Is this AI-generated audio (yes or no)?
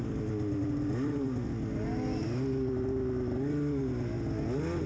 no